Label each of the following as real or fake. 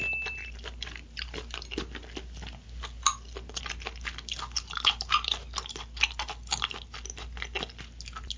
real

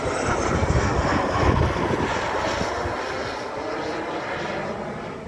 real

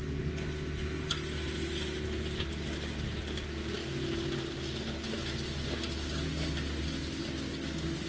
real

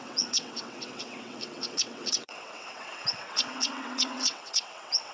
fake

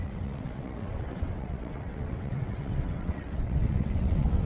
fake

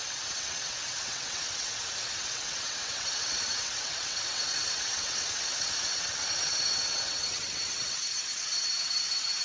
fake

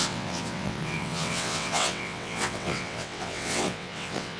fake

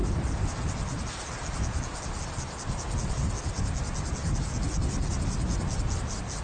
real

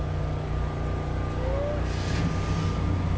real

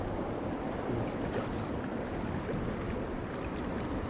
real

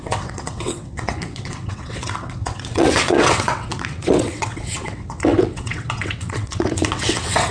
fake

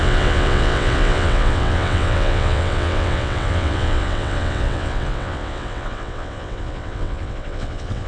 fake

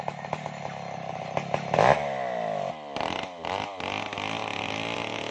real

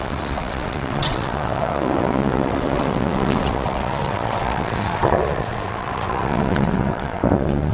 fake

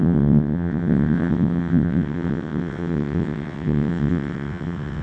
fake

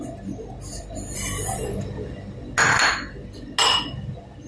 real